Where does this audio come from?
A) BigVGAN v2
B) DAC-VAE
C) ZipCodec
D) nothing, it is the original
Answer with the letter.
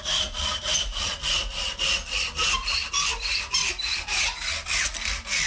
D